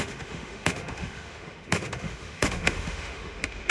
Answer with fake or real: fake